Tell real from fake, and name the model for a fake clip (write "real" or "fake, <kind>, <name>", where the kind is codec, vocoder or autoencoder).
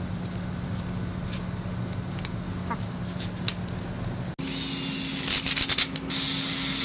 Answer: real